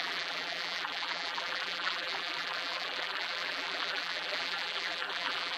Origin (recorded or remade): remade